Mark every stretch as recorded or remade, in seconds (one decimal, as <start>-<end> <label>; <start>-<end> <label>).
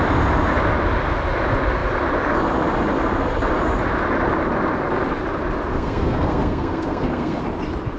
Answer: 0.0-5.7 recorded; 5.7-7.4 remade; 7.4-8.0 recorded